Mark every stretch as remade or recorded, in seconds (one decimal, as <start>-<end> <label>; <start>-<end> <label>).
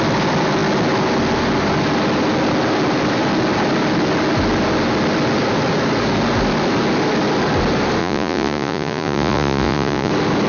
0.0-8.0 recorded; 8.0-10.1 remade; 10.1-10.5 recorded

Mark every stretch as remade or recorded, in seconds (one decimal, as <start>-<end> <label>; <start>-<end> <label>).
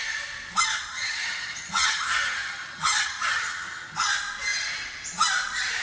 0.0-0.9 recorded; 0.9-4.1 remade; 4.1-5.8 recorded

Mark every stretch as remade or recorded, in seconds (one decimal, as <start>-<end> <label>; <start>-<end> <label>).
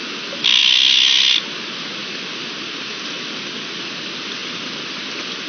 0.0-5.5 recorded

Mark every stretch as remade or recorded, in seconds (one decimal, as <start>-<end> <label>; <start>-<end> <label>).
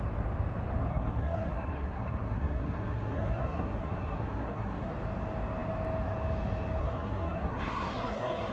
0.0-0.9 recorded; 0.9-4.9 remade; 4.9-6.8 recorded; 6.8-8.5 remade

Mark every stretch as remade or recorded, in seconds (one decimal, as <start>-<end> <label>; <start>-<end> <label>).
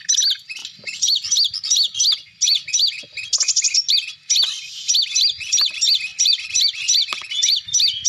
0.0-0.6 recorded; 0.6-1.3 remade; 1.3-6.1 recorded; 6.1-7.2 remade; 7.2-8.1 recorded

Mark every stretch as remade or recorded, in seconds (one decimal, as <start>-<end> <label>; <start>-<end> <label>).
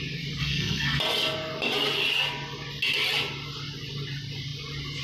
0.0-0.4 recorded; 0.4-1.0 remade; 1.0-5.0 recorded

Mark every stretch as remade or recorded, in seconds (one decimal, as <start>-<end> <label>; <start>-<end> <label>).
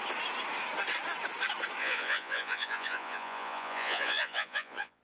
0.0-1.8 recorded; 1.8-5.0 remade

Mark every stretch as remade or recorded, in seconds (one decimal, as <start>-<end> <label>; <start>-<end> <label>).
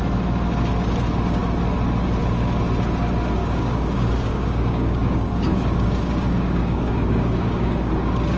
0.0-3.4 recorded; 3.4-7.9 remade; 7.9-8.4 recorded